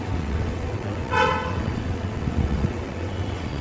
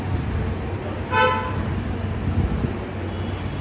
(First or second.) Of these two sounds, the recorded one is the second